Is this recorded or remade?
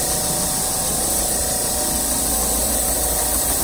recorded